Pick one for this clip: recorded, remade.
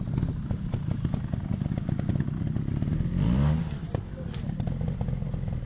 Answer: recorded